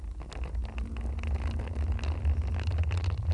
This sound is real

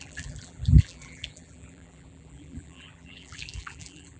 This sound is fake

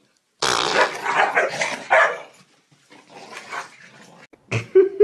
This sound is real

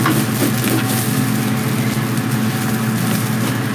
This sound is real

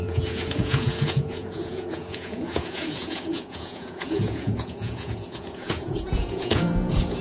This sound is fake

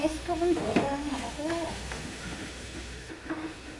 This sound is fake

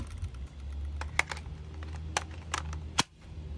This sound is real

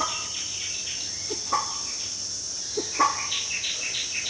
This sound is real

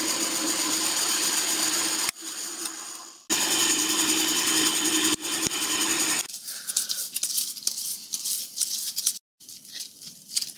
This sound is real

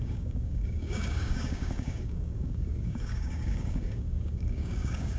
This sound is fake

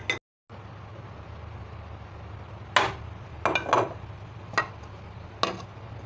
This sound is real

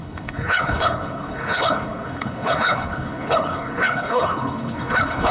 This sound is fake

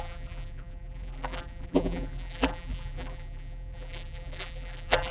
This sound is fake